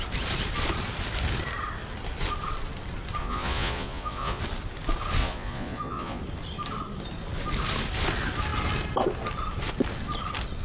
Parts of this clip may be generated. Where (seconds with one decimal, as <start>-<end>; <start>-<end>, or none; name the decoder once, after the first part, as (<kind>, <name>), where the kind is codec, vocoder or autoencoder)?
3.2-4.4 (vocoder, Vocos); 5.2-6.2